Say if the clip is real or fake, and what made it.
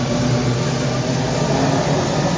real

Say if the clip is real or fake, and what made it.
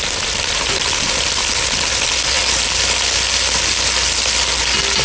real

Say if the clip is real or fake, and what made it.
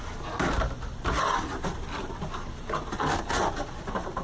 real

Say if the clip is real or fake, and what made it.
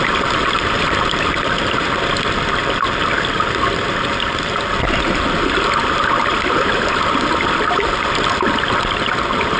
real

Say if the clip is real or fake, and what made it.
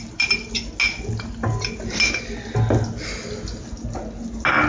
real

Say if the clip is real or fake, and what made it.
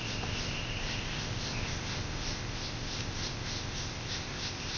fake, codec, ZipCodec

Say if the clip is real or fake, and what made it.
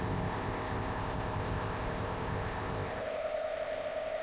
fake, codec, ZipCodec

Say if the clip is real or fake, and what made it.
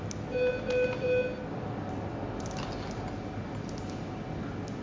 real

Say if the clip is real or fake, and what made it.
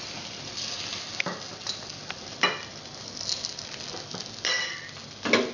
real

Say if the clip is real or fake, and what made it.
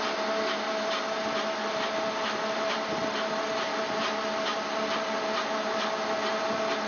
real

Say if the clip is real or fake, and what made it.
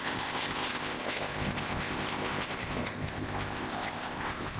fake, codec, ZipCodec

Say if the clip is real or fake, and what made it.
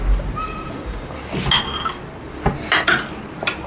real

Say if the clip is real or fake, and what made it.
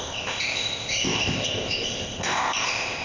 fake, codec, ZipCodec